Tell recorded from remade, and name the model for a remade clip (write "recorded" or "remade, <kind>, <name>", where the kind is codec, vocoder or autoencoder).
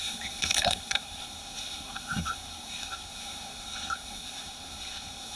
remade, codec, SNAC